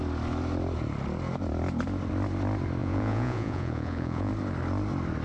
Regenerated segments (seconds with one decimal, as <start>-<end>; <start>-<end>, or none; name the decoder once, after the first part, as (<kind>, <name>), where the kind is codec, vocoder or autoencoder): 2.8-4.3 (vocoder, Vocos)